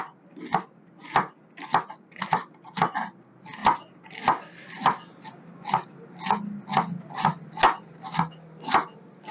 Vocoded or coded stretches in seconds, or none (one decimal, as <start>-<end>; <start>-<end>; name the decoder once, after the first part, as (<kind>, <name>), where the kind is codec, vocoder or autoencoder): none